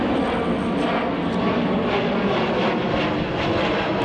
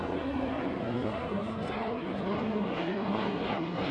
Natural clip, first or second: first